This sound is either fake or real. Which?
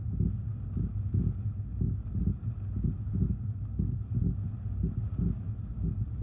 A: real